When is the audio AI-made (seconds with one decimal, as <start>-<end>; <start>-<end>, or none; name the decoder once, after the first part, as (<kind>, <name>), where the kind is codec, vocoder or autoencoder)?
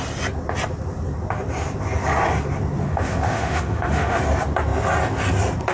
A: 2.8-4.2 (autoencoder, DAC-VAE)